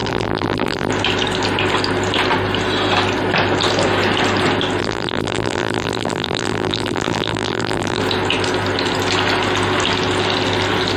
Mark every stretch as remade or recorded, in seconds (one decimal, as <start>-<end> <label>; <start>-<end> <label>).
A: 0.0-0.9 remade; 0.9-4.8 recorded; 4.8-8.0 remade; 8.0-11.0 recorded